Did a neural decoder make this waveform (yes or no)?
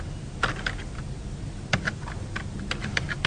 no